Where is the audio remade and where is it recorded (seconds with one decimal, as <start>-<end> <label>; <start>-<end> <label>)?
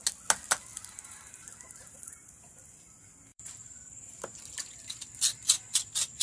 0.0-0.7 recorded; 0.7-2.5 remade; 2.5-3.3 recorded; 3.3-4.4 remade; 4.4-6.2 recorded